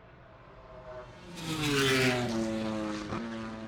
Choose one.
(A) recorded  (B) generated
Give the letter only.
A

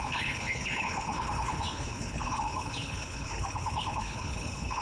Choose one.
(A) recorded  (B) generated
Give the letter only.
B